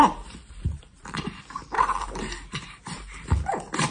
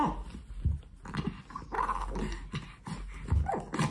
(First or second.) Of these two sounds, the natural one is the second